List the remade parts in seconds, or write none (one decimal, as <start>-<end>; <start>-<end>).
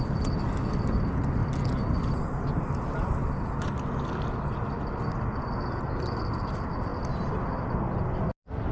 none